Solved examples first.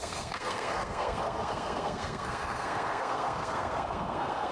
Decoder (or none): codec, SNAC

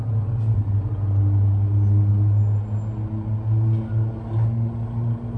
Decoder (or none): none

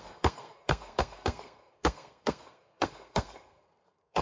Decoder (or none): codec, SNAC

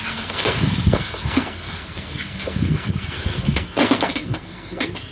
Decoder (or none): codec, SNAC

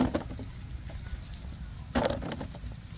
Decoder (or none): none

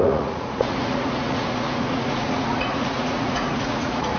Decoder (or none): vocoder, Vocos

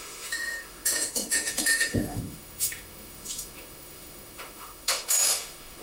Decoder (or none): autoencoder, DAC-VAE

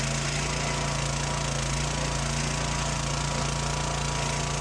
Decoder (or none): none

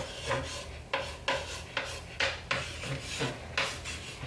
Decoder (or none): none